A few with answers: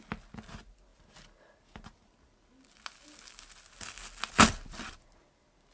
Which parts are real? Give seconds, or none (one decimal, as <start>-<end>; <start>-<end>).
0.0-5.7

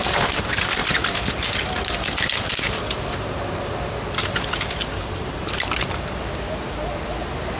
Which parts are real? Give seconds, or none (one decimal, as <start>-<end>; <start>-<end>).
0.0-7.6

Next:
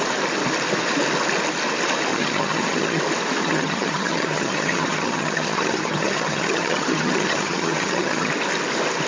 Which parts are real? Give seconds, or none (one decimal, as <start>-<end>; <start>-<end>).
0.0-2.1; 3.0-3.4; 8.3-9.1